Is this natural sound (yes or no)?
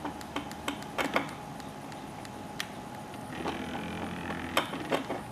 yes